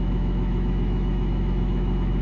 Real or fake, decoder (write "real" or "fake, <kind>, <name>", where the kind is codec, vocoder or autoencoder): fake, autoencoder, DAC-VAE